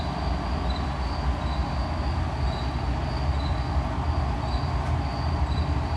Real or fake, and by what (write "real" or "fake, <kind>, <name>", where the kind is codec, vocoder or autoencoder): real